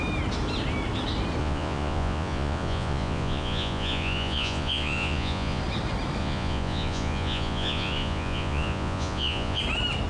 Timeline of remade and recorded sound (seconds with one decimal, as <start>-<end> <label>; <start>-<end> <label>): 0.0-1.4 recorded; 1.4-5.6 remade; 5.6-6.2 recorded; 6.2-9.6 remade; 9.6-10.1 recorded